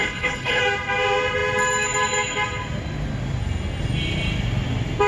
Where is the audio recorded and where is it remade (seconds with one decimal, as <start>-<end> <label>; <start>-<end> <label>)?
0.0-0.6 remade; 0.6-5.1 recorded